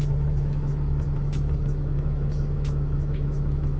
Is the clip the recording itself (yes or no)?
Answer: no